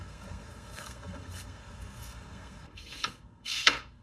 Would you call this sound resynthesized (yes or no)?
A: yes